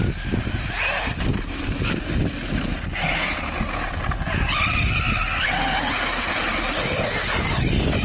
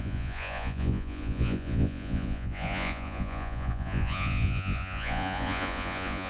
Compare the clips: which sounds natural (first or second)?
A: first